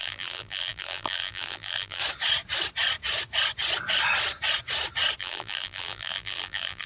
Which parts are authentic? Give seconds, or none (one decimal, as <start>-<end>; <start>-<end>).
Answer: 2.0-5.2